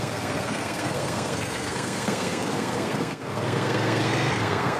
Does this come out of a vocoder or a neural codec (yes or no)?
yes